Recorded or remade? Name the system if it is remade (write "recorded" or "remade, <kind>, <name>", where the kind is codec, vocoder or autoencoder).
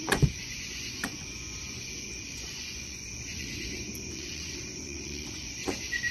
remade, vocoder, Vocos